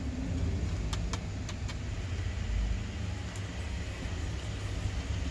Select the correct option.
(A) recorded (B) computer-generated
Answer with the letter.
A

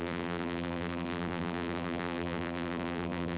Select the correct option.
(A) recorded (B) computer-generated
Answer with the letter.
B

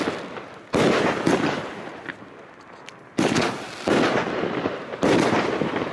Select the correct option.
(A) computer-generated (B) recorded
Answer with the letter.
B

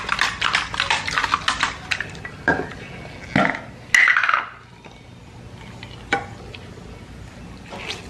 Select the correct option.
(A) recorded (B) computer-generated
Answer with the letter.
A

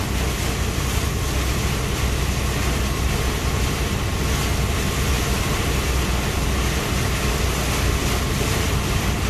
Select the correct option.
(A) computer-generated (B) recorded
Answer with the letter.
B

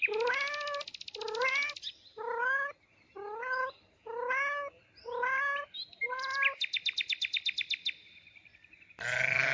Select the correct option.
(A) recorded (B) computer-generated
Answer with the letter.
A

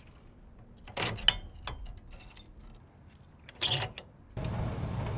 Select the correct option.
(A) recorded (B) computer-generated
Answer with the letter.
A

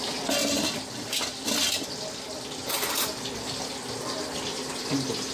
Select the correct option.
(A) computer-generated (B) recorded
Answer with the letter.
A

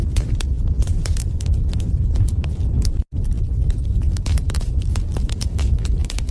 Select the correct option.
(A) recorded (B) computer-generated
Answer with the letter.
B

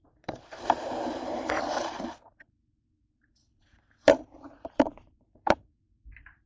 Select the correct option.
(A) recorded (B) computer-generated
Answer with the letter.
B